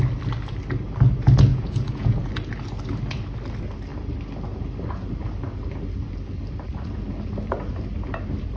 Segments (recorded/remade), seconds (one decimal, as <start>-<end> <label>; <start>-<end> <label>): 0.0-1.5 recorded; 1.5-2.3 remade; 2.3-8.6 recorded